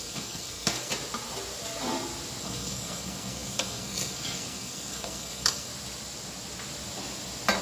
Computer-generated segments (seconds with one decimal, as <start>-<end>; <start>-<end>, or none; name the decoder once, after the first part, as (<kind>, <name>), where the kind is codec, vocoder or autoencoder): 0.0-0.9 (codec, SNAC); 2.4-5.7